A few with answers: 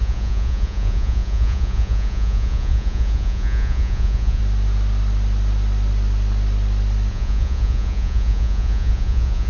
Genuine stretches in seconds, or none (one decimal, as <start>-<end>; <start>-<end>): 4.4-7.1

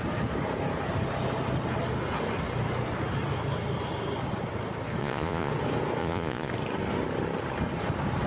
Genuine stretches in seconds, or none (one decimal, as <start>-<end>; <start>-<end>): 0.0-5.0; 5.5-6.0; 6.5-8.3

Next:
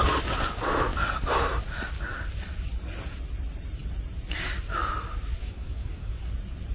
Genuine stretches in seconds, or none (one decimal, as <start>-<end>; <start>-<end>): 0.0-5.4; 6.3-6.7

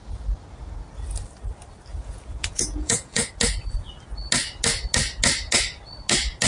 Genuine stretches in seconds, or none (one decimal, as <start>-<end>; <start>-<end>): 0.0-1.9; 3.3-6.5

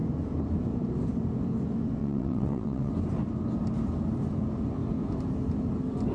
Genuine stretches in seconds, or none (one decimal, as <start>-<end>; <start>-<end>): 0.0-2.0; 2.9-6.1